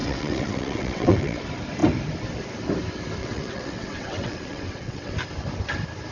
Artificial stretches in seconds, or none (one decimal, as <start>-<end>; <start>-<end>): 0.0-1.4; 3.2-5.1